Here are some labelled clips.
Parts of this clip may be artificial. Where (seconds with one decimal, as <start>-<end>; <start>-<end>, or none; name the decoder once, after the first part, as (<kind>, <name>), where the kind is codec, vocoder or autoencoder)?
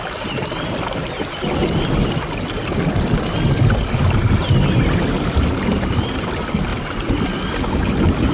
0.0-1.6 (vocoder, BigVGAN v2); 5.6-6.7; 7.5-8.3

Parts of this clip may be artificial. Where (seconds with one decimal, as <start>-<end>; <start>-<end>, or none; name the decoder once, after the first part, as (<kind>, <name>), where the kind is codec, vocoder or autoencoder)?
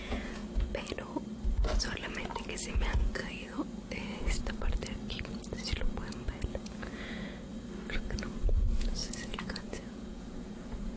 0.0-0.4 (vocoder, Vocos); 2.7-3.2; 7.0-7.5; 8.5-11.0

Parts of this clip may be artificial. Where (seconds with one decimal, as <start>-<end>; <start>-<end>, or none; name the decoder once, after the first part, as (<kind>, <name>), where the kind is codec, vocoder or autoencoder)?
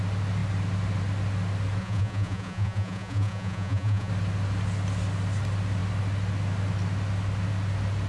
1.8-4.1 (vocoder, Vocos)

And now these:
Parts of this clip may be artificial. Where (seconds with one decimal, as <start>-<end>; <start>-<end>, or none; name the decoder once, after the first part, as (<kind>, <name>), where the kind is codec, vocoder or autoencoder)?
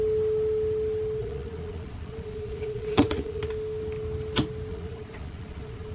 1.2-3.5 (vocoder, Vocos); 4.7-5.9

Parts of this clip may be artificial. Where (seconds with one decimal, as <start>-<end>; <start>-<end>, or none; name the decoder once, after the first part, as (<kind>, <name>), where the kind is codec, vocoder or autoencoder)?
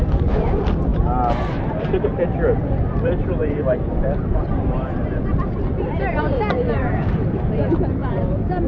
0.0-0.9 (vocoder, BigVGAN v2); 1.8-8.7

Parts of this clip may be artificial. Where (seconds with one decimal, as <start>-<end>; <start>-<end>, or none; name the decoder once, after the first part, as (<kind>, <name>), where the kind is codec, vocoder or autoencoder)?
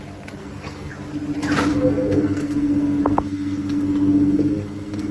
0.4-0.9 (codec, SNAC); 1.7-5.1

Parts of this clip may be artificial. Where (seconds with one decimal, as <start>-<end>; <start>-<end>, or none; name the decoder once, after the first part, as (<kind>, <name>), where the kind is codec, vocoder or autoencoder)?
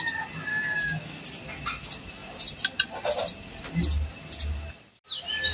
0.5-1.2 (autoencoder, DAC-VAE)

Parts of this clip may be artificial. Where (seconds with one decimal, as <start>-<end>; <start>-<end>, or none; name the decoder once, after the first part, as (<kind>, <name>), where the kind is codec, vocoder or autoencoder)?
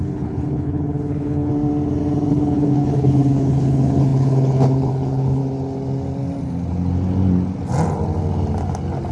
0.0-1.5 (codec, HILCodec); 2.3-5.4